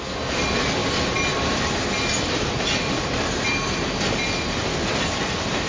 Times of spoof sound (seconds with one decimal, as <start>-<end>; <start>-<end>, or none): none

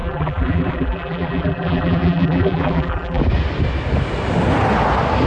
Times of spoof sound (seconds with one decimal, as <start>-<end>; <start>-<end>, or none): 0.0-3.2

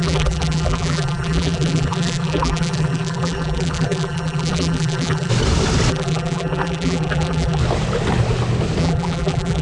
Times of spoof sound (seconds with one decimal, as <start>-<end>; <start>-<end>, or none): 0.0-5.3; 5.9-7.6; 8.8-9.6

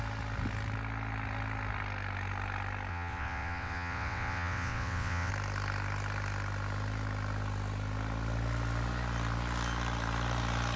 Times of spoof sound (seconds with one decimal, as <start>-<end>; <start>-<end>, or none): 2.9-5.3

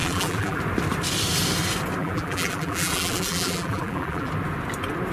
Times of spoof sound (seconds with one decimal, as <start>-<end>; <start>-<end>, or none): 0.0-0.6; 2.0-4.3

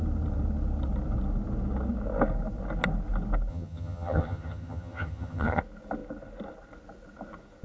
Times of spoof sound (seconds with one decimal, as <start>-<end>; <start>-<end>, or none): 3.5-5.6